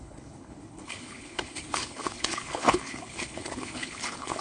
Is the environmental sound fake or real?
fake